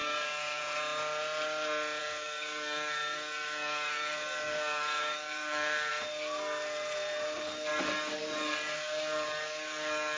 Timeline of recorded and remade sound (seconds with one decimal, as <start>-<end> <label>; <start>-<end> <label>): 0.0-0.6 remade; 0.6-2.0 recorded; 2.0-5.9 remade; 5.9-7.7 recorded; 7.7-10.2 remade